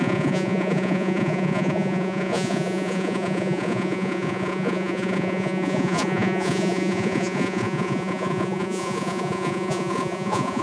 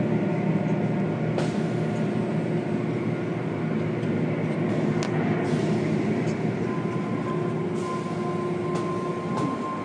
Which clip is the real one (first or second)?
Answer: second